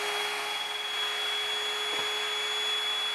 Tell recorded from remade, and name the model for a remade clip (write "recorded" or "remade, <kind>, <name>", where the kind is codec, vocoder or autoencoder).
recorded